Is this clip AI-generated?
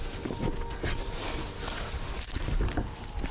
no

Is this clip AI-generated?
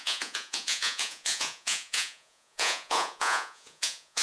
yes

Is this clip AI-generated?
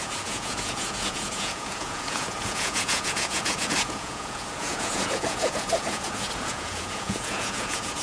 yes